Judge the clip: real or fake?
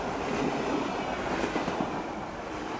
real